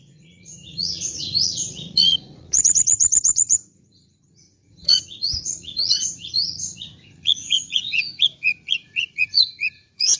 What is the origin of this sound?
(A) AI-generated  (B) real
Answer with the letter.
A